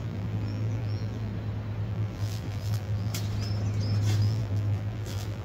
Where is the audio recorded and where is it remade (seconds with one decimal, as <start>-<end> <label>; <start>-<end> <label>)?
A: 0.0-1.3 remade; 1.3-1.9 recorded; 1.9-3.1 remade; 3.1-4.2 recorded; 4.2-5.4 remade